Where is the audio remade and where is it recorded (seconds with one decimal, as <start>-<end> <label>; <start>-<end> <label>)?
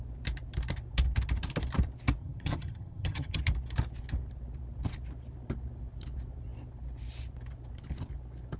0.0-2.2 recorded; 2.2-3.4 remade; 3.4-8.6 recorded